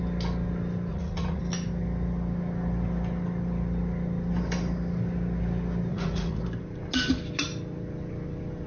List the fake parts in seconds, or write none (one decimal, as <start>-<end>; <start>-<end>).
0.9-1.4; 5.9-6.4